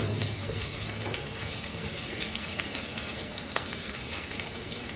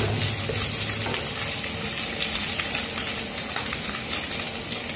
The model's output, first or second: first